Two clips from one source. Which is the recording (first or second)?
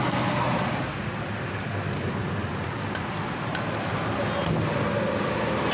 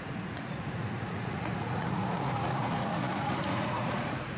first